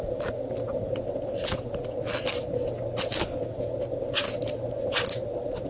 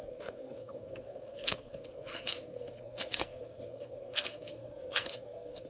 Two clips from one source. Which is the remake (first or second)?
second